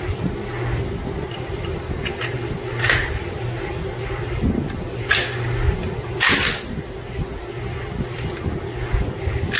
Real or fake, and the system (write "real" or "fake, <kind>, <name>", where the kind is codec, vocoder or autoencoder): real